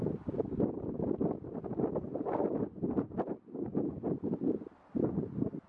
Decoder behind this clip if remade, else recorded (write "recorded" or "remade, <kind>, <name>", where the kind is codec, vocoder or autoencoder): recorded